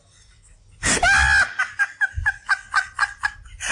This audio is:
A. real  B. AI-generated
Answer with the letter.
A